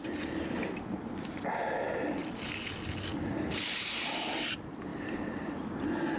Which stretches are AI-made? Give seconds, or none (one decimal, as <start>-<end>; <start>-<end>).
none